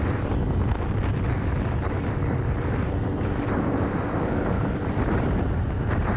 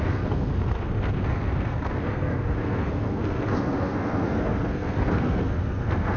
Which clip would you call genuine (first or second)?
first